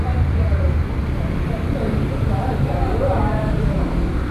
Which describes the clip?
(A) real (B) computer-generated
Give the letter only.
B